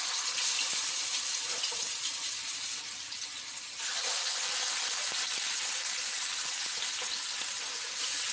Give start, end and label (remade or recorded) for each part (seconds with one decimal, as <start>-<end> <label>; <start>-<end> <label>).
0.0-8.3 recorded